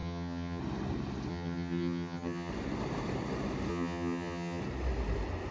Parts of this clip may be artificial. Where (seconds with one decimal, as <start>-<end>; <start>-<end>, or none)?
0.0-0.6; 1.3-2.5; 3.7-4.6

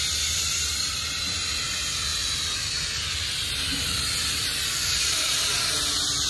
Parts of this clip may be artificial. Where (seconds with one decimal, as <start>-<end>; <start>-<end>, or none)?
none

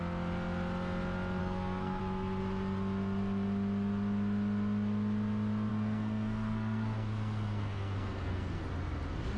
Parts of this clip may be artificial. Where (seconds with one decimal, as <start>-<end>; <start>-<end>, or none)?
1.4-2.0; 5.7-8.6

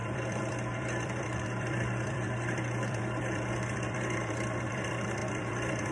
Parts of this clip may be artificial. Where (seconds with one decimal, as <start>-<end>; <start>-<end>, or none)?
0.0-5.9